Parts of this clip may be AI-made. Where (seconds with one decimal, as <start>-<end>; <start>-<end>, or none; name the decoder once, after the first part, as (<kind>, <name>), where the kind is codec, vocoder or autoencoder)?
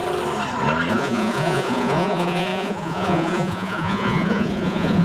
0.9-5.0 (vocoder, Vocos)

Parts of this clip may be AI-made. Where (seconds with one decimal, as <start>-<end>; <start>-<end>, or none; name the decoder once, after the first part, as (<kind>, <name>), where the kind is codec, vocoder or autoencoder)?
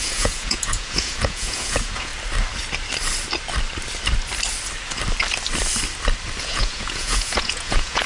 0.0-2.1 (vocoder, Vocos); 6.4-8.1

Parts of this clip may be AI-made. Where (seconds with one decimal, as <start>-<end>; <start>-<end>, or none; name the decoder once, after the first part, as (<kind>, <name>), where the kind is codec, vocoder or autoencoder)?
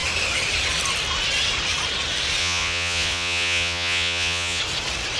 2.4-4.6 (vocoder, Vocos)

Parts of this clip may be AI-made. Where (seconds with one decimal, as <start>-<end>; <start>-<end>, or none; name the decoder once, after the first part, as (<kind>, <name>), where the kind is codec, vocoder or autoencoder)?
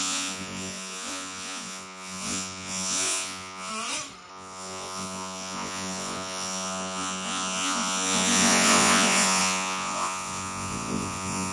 0.0-3.7 (vocoder, Vocos); 4.3-11.5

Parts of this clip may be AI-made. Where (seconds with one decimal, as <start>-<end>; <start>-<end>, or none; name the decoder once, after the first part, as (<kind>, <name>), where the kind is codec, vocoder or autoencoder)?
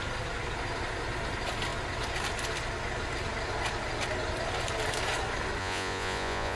5.6-6.6 (vocoder, Vocos)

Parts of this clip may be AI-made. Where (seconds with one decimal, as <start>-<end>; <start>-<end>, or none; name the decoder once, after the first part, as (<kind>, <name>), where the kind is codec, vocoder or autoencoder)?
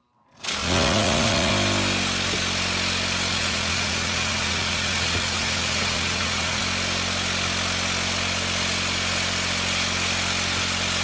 0.6-1.5 (vocoder, Vocos); 3.3-6.6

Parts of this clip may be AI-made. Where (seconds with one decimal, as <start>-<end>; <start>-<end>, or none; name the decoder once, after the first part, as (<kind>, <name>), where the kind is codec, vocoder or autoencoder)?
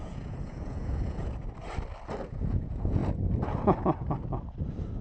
0.0-1.4 (vocoder, Vocos); 2.3-3.0